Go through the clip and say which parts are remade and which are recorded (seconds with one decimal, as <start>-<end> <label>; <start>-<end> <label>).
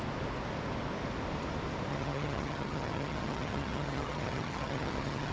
0.0-1.9 recorded; 1.9-5.3 remade